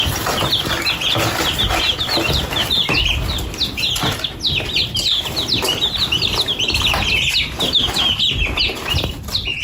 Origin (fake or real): real